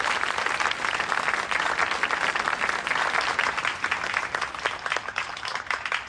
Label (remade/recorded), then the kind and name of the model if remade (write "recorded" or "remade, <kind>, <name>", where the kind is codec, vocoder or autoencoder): recorded